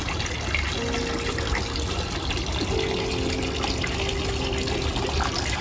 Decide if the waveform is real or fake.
real